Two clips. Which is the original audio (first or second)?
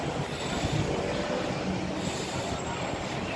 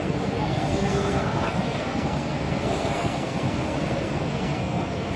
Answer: first